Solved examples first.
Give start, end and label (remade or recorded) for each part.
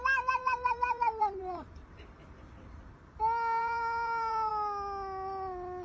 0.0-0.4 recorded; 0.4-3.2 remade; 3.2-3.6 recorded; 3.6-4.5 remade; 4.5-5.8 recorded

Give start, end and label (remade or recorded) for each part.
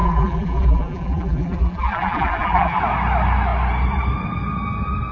0.0-2.8 remade; 2.8-5.1 recorded